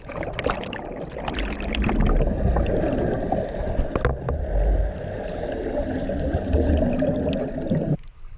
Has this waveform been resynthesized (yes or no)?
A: no